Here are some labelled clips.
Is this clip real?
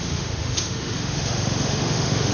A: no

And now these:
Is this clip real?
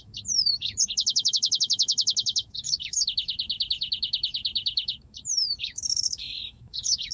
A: no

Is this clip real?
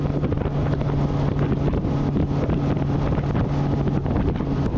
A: yes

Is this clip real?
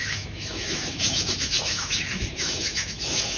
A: no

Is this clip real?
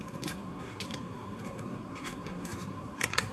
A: no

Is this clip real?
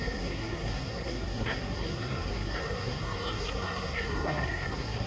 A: no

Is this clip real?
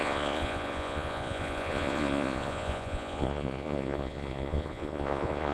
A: no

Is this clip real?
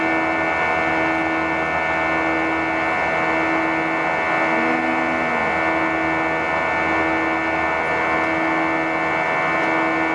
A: yes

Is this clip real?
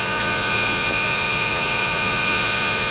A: no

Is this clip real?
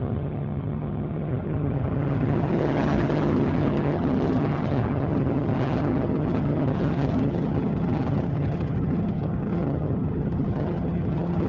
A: no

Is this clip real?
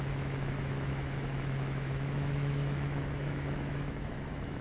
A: no